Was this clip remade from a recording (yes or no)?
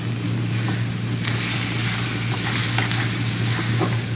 no